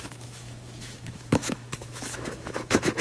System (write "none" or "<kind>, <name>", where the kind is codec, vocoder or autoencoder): autoencoder, DAC-VAE